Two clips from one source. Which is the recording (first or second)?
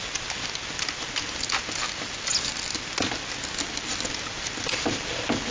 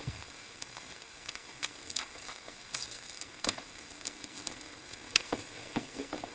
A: first